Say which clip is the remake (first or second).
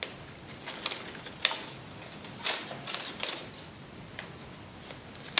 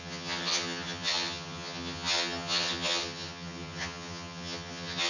second